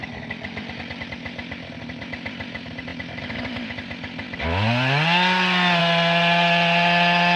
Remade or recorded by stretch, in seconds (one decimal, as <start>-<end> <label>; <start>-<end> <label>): 0.0-7.4 recorded